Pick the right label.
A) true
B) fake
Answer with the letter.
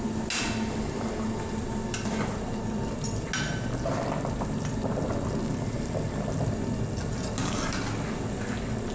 A